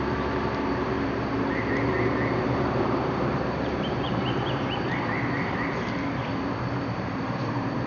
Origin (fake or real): fake